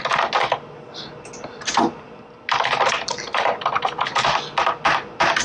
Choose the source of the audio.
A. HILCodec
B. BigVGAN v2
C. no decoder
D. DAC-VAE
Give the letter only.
C